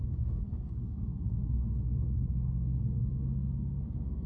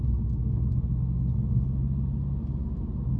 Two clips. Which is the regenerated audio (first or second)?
first